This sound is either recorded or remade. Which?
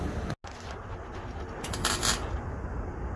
recorded